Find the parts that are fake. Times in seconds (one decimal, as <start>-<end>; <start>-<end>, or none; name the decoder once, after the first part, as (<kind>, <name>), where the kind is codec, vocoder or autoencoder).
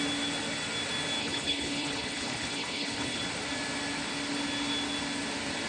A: 1.2-3.2 (codec, HILCodec)